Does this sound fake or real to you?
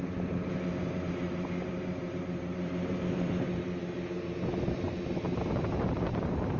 fake